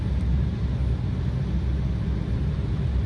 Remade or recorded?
recorded